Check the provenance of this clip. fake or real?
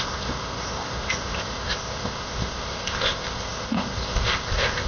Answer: fake